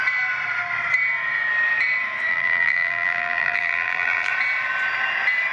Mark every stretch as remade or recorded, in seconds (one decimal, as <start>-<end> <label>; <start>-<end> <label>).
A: 0.0-2.3 recorded; 2.3-4.3 remade; 4.3-5.5 recorded